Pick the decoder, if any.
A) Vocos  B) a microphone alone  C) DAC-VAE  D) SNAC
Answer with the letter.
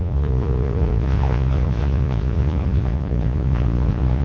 A